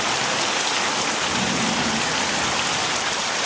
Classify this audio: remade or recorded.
recorded